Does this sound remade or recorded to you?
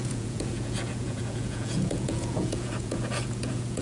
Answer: remade